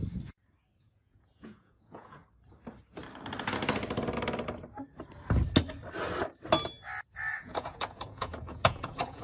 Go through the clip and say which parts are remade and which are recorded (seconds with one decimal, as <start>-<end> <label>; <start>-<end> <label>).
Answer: 0.0-0.8 recorded; 0.8-2.2 remade; 2.2-7.3 recorded; 7.3-9.2 remade

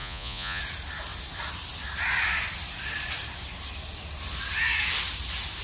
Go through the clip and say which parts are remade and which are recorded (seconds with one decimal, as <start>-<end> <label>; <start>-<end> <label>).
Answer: 0.0-0.6 remade; 0.6-5.6 recorded

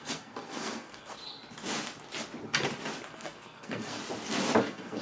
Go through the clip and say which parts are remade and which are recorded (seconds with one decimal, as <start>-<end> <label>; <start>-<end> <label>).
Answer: 0.0-1.2 remade; 1.2-3.1 recorded; 3.1-4.0 remade; 4.0-4.6 recorded; 4.6-5.0 remade

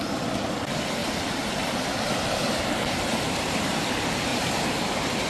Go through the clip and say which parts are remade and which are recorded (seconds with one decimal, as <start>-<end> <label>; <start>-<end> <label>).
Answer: 0.0-1.0 recorded; 1.0-3.8 remade; 3.8-4.3 recorded; 4.3-4.8 remade; 4.8-5.3 recorded

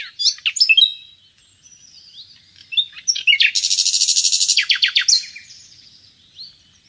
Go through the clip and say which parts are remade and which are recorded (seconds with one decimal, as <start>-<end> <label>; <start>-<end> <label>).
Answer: 0.0-6.9 recorded

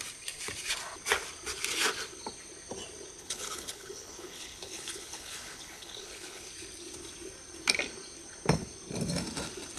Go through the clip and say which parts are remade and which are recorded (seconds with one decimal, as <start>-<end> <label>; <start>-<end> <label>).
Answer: 0.0-3.2 recorded; 3.2-6.5 remade; 6.5-9.8 recorded